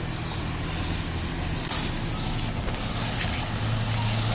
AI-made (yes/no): no